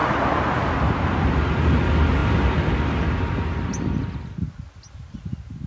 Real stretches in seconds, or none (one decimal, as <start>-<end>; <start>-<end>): 0.0-5.7